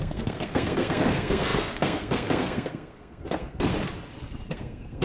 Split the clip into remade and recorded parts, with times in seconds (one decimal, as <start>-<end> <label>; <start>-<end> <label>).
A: 0.0-3.7 remade; 3.7-4.5 recorded; 4.5-5.0 remade